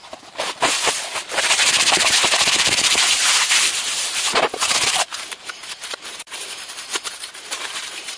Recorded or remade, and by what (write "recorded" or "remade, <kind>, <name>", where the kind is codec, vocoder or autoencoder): remade, vocoder, BigVGAN v2